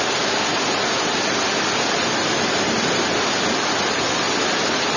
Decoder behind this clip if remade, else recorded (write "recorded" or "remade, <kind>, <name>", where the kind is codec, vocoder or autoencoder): recorded